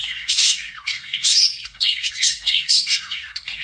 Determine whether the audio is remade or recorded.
remade